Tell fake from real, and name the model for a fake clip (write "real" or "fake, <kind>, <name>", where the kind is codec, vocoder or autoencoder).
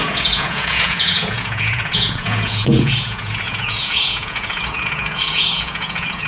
fake, vocoder, Vocos